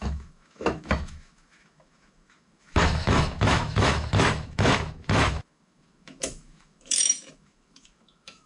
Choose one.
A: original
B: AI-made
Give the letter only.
B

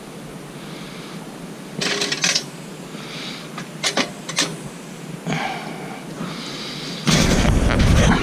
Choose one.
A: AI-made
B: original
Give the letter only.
B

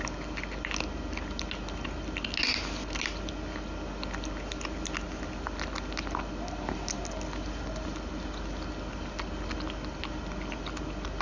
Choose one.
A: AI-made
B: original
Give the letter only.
B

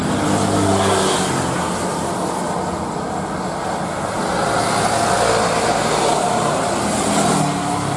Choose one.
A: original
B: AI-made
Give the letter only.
A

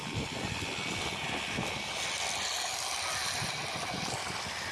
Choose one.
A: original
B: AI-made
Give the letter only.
A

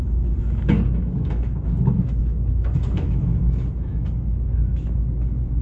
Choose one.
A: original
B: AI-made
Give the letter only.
B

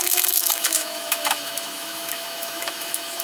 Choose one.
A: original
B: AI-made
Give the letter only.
B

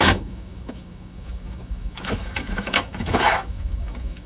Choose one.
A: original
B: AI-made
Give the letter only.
B